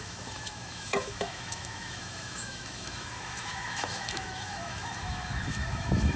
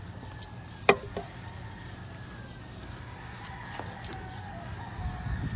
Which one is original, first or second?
second